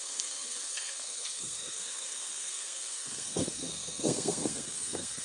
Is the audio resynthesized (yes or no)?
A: yes